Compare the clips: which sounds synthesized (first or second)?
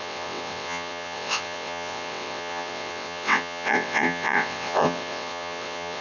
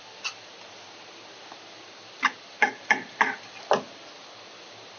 first